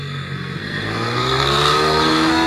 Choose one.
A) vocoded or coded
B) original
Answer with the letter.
A